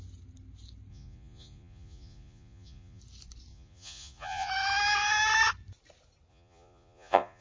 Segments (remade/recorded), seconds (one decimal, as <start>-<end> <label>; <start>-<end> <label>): 0.0-0.9 recorded; 0.9-3.0 remade; 3.0-3.5 recorded; 3.5-4.5 remade; 4.5-6.3 recorded; 6.3-7.4 remade